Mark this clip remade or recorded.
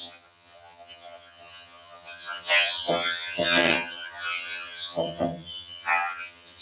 remade